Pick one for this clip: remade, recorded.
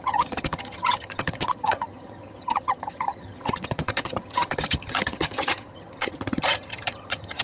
remade